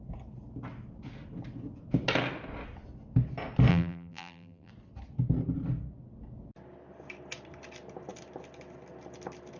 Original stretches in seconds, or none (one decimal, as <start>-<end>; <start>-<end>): 0.0-3.7; 4.7-9.6